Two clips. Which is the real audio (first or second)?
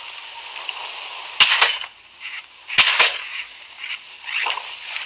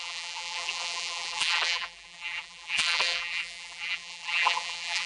first